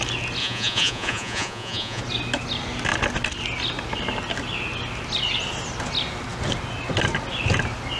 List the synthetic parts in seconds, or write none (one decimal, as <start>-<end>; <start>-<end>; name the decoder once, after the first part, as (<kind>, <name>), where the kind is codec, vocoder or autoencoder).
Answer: 0.4-2.0 (vocoder, Vocos)